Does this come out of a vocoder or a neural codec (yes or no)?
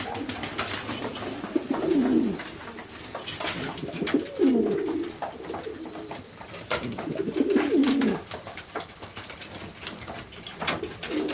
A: no